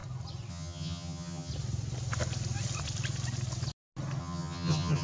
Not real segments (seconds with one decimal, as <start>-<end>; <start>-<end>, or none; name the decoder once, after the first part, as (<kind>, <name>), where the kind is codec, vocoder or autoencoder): 0.5-1.5 (vocoder, HiFi-GAN); 4.2-5.0